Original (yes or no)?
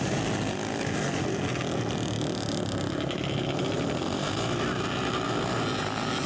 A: yes